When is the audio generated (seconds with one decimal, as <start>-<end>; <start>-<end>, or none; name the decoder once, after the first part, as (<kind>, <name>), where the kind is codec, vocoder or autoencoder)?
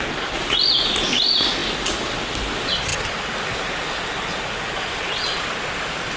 none